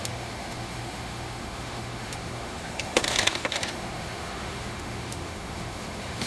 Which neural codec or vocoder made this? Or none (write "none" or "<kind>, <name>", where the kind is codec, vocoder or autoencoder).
autoencoder, DAC-VAE